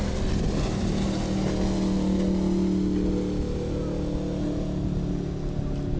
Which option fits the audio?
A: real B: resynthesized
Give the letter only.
A